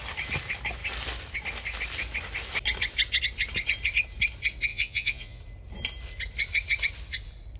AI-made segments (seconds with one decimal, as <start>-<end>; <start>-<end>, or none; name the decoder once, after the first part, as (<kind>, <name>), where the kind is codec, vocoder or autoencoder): 4.7-5.4 (vocoder, Vocos)